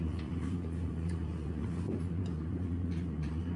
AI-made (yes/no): yes